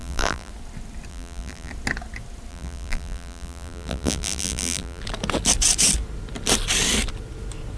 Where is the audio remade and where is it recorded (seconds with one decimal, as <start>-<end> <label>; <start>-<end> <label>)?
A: 0.0-0.5 remade; 0.5-1.1 recorded; 1.1-1.7 remade; 1.7-2.5 recorded; 2.5-5.0 remade; 5.0-7.8 recorded

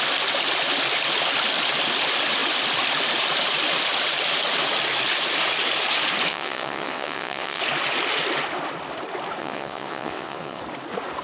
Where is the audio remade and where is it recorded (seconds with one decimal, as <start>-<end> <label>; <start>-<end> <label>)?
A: 0.0-6.3 recorded; 6.3-7.6 remade; 7.6-9.4 recorded; 9.4-10.6 remade; 10.6-11.2 recorded

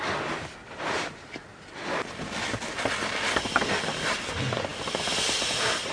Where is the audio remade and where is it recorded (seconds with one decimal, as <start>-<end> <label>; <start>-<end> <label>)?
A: 0.0-5.9 recorded

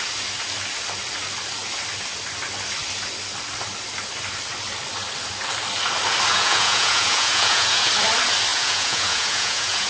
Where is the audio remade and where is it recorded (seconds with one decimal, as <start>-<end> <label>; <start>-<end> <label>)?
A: 0.0-6.3 recorded; 6.3-7.9 remade; 7.9-8.5 recorded; 8.5-9.9 remade

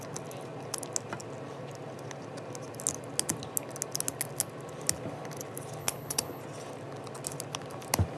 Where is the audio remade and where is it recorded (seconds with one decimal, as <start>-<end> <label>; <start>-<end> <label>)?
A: 0.0-5.8 recorded; 5.8-6.4 remade; 6.4-8.2 recorded